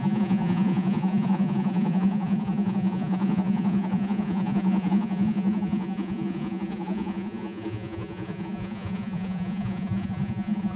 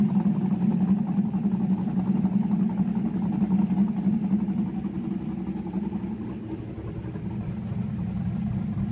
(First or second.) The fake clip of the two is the first